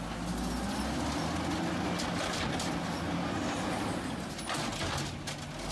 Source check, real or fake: real